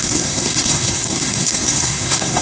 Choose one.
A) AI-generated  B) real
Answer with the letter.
A